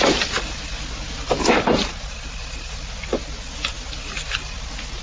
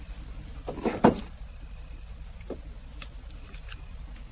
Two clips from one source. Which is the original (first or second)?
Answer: first